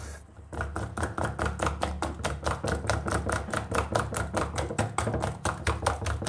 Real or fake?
real